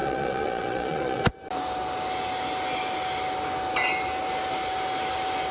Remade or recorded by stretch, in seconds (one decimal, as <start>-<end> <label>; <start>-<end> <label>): 0.0-1.2 remade; 1.2-5.5 recorded